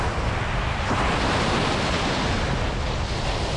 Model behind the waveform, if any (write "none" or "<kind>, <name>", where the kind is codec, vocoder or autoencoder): none